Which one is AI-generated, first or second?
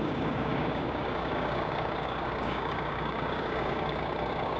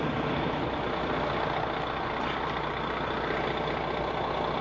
first